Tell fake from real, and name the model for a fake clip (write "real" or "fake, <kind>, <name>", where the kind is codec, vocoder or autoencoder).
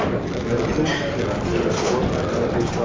fake, vocoder, BigVGAN v2